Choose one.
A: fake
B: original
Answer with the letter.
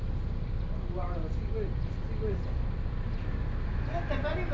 B